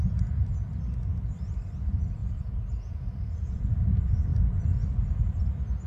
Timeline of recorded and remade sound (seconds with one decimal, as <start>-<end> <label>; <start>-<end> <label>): 0.0-2.2 recorded; 2.2-3.7 remade; 3.7-5.9 recorded